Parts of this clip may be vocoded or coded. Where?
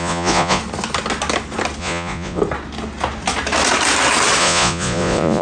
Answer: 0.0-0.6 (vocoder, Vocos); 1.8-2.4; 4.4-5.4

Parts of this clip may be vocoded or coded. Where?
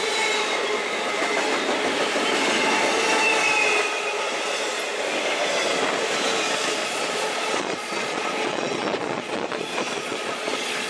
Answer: 6.8-10.9 (vocoder, Vocos)